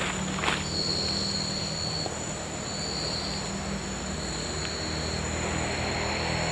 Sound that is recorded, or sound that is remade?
recorded